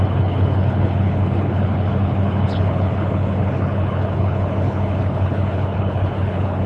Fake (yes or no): yes